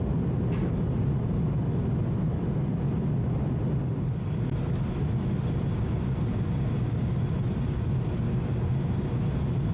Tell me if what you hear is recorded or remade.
recorded